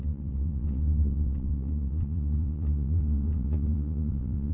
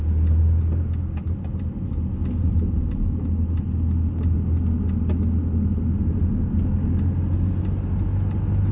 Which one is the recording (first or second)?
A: second